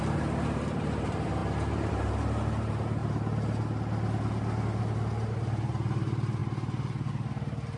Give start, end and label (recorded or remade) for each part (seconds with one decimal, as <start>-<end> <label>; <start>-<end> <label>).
0.0-1.4 remade; 1.4-1.9 recorded; 1.9-3.0 remade; 3.0-5.3 recorded; 5.3-7.8 remade

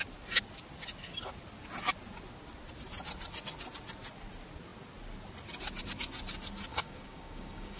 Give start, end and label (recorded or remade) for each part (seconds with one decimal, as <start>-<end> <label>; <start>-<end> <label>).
0.0-6.7 recorded; 6.7-7.8 remade

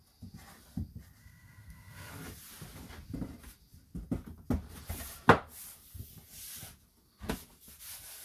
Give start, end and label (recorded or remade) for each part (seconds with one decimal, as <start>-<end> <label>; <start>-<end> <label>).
0.0-1.2 recorded; 1.2-2.1 remade; 2.1-8.2 recorded

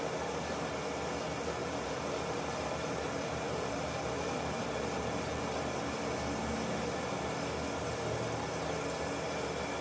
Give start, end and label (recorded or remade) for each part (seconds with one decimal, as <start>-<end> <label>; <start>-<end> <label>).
0.0-1.6 recorded; 1.6-5.4 remade; 5.4-9.8 recorded

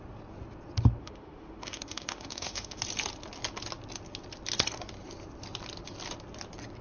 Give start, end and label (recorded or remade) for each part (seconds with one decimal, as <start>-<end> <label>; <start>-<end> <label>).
0.0-1.0 recorded; 1.0-2.8 remade; 2.8-6.8 recorded

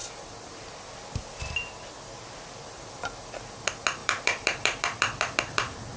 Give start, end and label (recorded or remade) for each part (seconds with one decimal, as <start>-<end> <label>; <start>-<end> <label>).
0.0-4.0 recorded; 4.0-6.0 remade

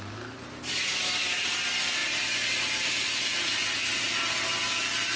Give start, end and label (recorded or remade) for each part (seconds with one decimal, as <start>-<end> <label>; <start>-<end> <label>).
0.0-5.2 recorded

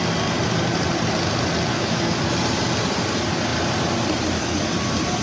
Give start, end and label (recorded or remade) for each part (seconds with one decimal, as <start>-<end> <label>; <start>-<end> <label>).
0.0-1.7 recorded; 1.7-2.2 remade; 2.2-5.2 recorded